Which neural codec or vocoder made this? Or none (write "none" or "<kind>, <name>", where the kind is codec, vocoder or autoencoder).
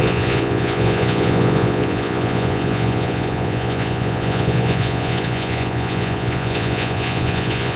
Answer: vocoder, Vocos